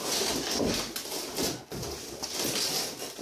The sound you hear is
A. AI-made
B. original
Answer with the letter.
B